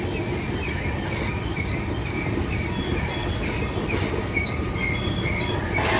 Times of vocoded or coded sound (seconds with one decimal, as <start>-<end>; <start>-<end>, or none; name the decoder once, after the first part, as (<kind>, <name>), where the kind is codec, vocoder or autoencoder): 2.0-2.6 (vocoder, BigVGAN v2); 3.4-4.2